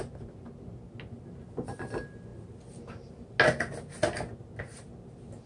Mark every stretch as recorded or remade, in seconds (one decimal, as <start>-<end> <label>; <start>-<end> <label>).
0.0-5.5 recorded